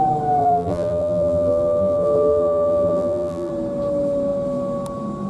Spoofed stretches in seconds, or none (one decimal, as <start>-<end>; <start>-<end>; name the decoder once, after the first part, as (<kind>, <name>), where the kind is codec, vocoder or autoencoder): 0.4-3.5 (vocoder, BigVGAN v2)